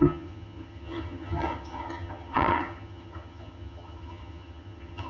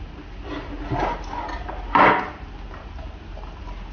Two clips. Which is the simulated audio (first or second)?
first